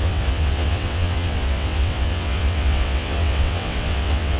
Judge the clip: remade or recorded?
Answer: remade